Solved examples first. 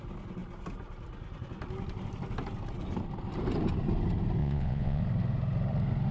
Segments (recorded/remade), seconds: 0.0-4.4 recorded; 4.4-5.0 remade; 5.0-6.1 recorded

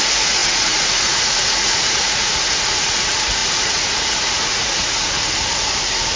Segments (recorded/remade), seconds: 0.0-6.2 remade